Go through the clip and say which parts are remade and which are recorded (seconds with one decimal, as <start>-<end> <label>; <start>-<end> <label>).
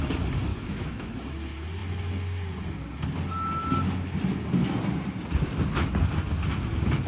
0.0-0.5 recorded; 0.5-1.1 remade; 1.1-7.1 recorded